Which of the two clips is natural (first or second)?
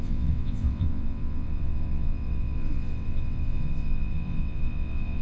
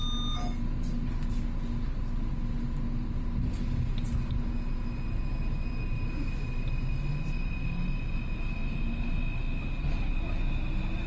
second